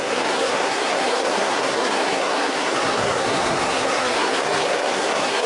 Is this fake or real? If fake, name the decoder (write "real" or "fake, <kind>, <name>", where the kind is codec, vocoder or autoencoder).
fake, codec, SNAC